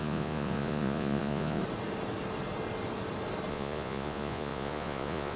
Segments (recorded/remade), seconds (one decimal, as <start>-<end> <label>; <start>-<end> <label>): 0.0-1.6 remade; 1.6-3.5 recorded; 3.5-5.4 remade